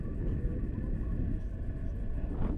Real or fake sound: real